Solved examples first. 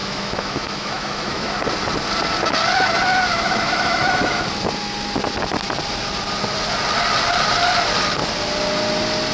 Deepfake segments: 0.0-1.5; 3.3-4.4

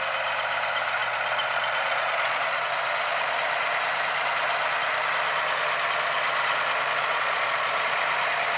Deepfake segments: 1.0-2.7; 7.0-8.0

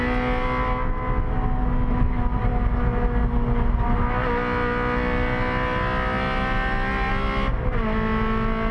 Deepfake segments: none

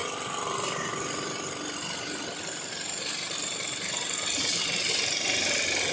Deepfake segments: 0.0-2.7

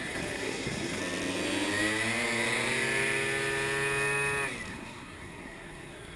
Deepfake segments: 0.0-1.0; 4.7-6.2

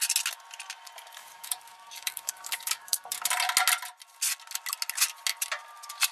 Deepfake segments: 1.2-3.3

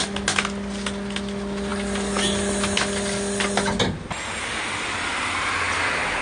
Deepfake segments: none